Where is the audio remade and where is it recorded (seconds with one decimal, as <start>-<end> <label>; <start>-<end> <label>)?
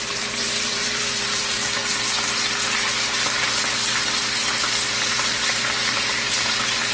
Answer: 0.0-1.8 remade; 1.8-5.9 recorded; 5.9-6.9 remade